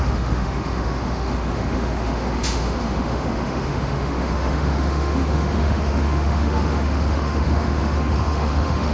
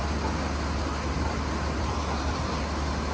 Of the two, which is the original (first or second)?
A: second